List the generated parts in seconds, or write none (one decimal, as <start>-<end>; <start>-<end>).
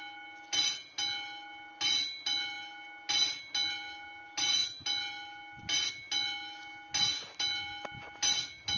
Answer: none